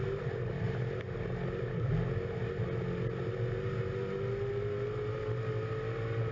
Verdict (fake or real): real